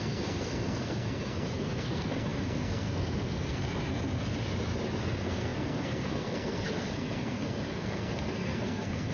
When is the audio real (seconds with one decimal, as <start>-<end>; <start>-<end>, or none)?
3.7-5.0